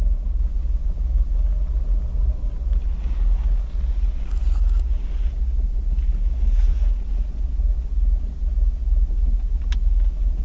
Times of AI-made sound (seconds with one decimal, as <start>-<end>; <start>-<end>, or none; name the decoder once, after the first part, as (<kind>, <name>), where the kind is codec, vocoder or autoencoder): none